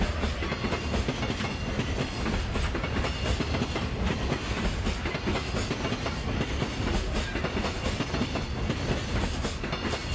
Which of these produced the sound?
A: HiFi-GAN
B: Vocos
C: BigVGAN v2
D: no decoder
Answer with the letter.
D